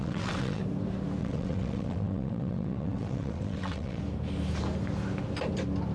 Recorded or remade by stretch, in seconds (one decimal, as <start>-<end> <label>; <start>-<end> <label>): 0.0-0.6 remade; 0.6-1.2 recorded; 1.2-4.0 remade; 4.0-5.9 recorded